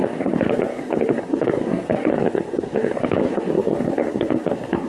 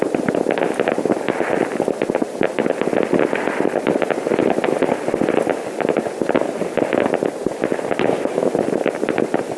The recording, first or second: second